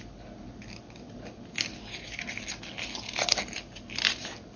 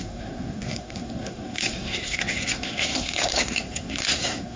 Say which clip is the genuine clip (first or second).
first